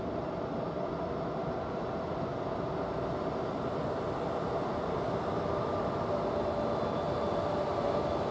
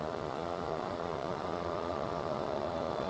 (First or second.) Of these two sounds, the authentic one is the first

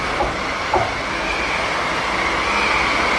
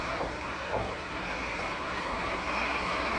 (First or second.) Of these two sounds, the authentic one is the first